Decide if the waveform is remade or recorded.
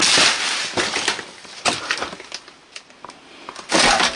recorded